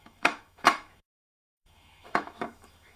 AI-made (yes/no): yes